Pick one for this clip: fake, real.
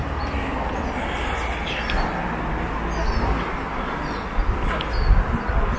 real